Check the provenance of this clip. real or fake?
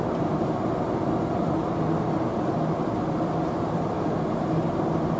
real